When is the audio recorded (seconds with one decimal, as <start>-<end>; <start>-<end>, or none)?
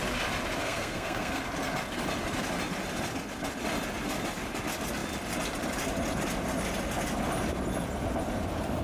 0.0-0.6; 1.4-8.8